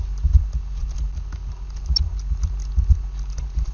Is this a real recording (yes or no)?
yes